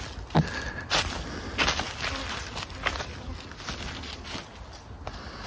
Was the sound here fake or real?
real